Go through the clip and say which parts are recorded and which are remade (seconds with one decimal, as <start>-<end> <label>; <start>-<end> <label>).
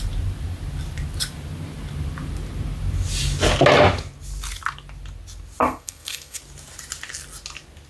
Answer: 0.0-5.6 recorded; 5.6-6.4 remade; 6.4-7.9 recorded